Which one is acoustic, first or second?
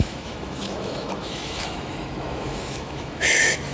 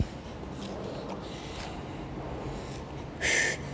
second